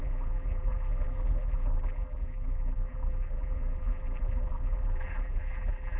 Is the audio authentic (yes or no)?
no